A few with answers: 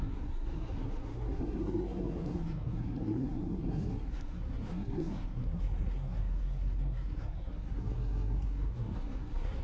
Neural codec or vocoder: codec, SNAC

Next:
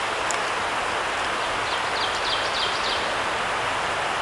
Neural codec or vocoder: none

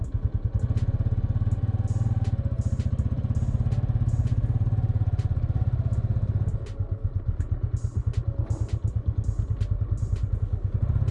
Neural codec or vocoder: none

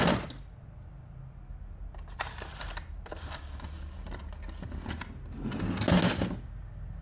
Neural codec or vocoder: none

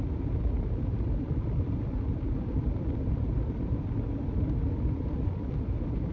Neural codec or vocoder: vocoder, BigVGAN v2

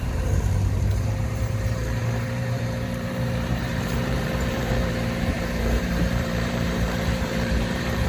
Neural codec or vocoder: vocoder, BigVGAN v2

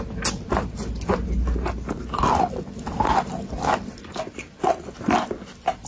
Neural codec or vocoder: none